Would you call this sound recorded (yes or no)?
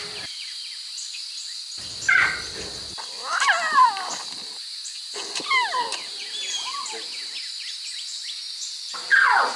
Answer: yes